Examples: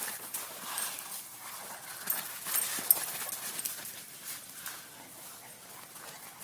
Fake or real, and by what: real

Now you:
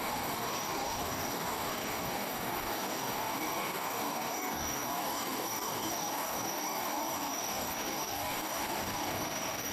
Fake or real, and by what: fake, codec, DAC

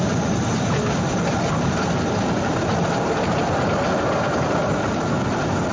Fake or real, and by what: real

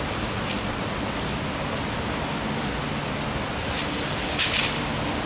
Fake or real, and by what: real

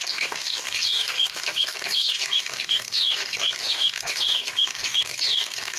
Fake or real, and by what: fake, codec, DAC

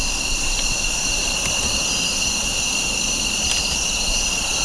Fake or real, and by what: real